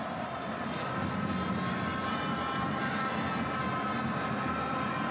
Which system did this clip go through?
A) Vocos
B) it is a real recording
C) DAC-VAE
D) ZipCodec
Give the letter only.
B